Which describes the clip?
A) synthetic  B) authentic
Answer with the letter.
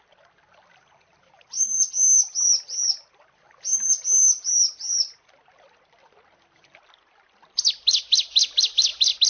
B